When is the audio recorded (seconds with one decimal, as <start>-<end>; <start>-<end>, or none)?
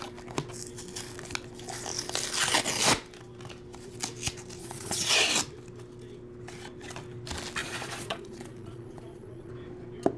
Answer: 0.0-4.6; 5.3-7.6; 9.5-10.2